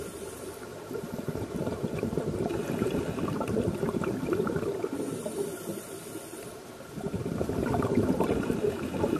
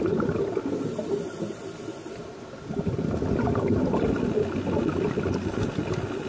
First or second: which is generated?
first